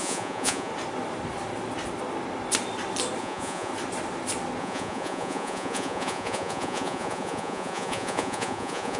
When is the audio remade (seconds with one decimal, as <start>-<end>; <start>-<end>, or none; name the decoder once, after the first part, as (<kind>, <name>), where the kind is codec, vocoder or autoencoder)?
0.0-0.7 (vocoder, Vocos); 3.2-3.7; 4.6-9.0